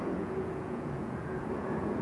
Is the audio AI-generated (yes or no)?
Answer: yes